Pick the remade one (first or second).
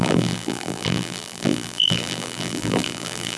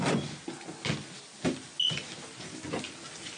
first